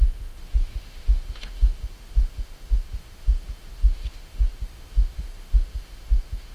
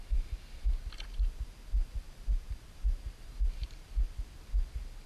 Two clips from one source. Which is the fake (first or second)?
first